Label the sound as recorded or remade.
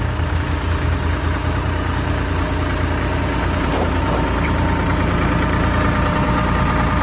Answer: remade